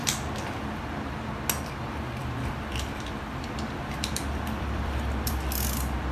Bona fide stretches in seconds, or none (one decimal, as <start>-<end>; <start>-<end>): 0.8-2.2; 5.3-6.1